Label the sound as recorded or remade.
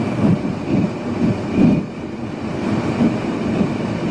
recorded